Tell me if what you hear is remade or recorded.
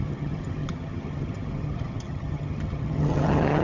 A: remade